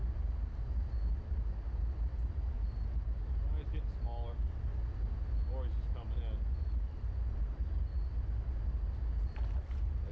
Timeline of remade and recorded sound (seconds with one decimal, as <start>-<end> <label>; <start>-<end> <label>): 0.0-10.1 recorded